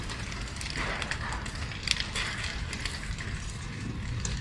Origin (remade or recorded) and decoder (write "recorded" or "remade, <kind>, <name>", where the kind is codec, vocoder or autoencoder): recorded